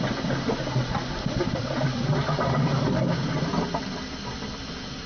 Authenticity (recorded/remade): recorded